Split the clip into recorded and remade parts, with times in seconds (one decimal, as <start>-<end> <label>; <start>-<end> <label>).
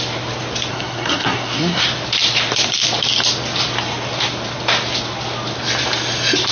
0.0-0.7 recorded; 0.7-1.8 remade; 1.8-6.5 recorded